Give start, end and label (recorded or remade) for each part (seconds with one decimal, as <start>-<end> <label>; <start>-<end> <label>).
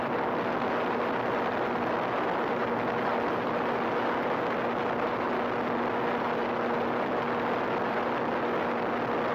0.0-2.6 recorded; 2.6-3.9 remade; 3.9-9.3 recorded